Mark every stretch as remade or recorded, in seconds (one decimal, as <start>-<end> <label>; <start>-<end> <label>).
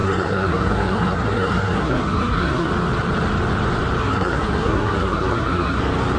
0.0-2.7 remade; 2.7-4.0 recorded; 4.0-5.8 remade; 5.8-6.2 recorded